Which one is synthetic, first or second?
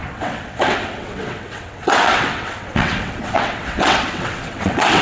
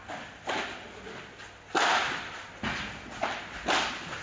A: first